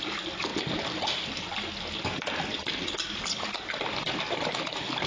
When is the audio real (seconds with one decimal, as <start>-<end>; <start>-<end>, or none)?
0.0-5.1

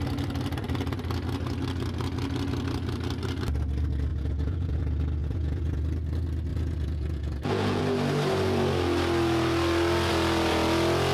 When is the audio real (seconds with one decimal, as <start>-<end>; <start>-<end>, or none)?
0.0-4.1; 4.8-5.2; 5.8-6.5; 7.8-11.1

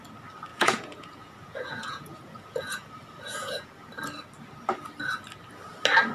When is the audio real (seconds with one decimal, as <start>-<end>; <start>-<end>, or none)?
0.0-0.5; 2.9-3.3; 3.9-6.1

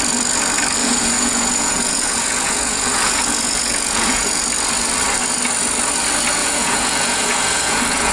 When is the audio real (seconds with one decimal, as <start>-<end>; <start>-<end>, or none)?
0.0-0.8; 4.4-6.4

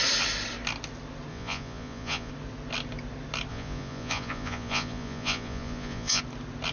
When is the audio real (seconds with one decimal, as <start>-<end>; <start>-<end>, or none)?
0.0-1.3; 2.3-3.5; 6.2-6.7

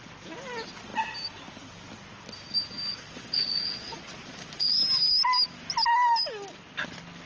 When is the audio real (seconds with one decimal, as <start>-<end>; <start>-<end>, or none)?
0.0-2.9; 4.8-7.3